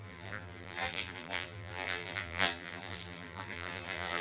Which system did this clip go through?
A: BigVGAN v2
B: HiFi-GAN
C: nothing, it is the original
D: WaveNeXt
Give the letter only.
A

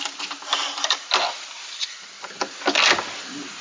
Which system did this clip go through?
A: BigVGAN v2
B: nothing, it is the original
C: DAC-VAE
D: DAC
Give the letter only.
B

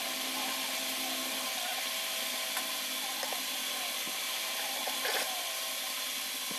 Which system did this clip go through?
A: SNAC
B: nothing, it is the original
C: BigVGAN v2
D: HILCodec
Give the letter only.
B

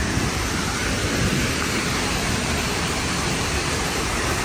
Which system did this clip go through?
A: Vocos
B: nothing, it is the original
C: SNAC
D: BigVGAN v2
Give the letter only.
D